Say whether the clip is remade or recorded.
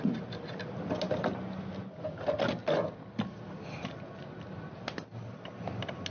recorded